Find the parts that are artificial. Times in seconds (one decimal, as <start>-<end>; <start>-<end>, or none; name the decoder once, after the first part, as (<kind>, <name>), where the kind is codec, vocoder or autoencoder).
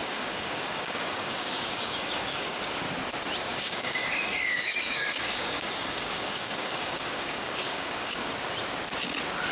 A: 0.0-2.6 (codec, DAC); 3.5-8.3